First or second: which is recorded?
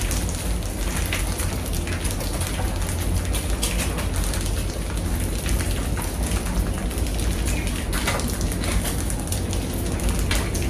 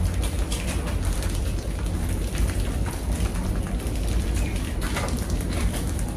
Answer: first